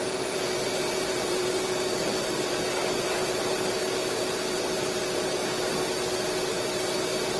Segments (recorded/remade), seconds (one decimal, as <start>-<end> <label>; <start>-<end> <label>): 0.0-5.4 remade; 5.4-6.5 recorded; 6.5-7.4 remade